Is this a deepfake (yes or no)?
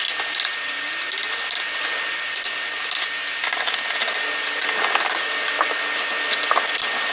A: no